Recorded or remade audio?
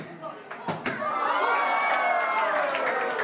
recorded